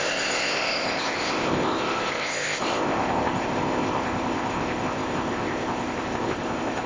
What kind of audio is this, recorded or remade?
remade